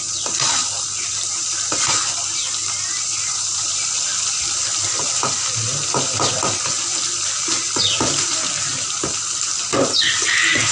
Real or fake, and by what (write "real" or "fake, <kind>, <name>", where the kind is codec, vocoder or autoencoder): real